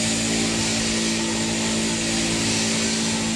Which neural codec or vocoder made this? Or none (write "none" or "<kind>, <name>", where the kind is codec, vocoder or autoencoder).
none